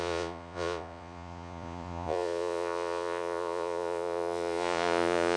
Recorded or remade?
remade